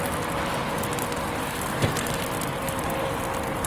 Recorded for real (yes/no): yes